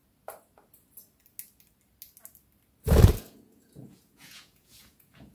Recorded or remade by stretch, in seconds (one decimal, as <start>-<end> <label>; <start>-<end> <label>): 0.0-3.2 recorded; 3.2-5.3 remade